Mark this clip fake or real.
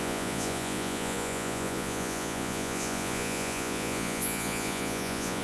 fake